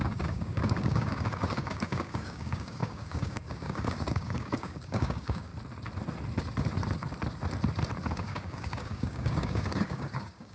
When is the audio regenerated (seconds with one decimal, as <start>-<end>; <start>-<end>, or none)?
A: 0.0-5.5; 8.1-10.5